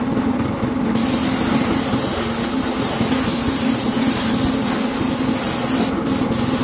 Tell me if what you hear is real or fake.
real